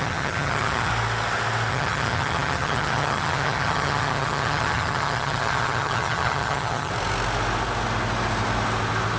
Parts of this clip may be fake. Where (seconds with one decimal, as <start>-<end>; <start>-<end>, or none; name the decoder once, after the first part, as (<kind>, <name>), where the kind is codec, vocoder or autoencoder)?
0.0-0.9 (vocoder, HiFi-GAN); 1.7-6.9